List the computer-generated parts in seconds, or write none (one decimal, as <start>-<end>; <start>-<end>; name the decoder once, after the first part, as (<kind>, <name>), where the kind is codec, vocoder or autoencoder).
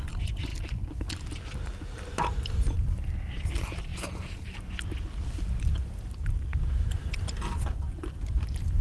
3.9-4.6 (vocoder, BigVGAN v2); 6.5-8.8